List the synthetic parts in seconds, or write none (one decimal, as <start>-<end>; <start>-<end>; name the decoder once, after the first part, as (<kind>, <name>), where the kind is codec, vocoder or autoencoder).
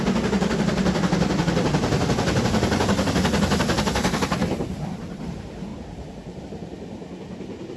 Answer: 4.4-5.2 (vocoder, BigVGAN v2); 5.7-6.4